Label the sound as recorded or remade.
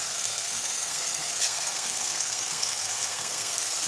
remade